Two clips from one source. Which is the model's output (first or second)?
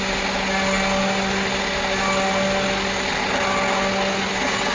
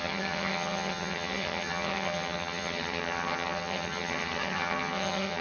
second